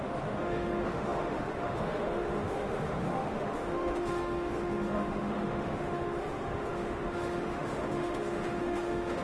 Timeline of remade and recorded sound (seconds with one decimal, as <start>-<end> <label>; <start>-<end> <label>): 0.0-9.2 remade